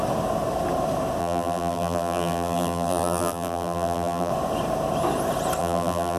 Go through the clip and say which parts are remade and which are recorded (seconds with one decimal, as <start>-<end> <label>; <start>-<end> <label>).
0.0-1.2 recorded; 1.2-4.3 remade; 4.3-5.6 recorded; 5.6-6.2 remade